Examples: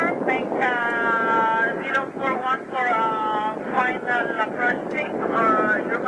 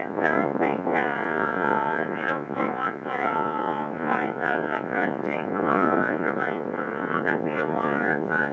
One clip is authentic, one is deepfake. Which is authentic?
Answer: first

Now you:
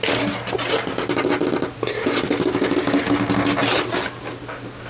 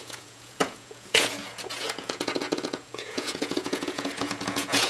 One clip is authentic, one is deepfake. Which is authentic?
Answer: first